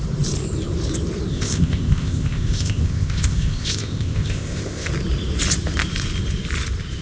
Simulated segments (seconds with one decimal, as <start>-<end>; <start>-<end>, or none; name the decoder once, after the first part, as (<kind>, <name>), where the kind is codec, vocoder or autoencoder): 1.3-4.9 (codec, ZipCodec)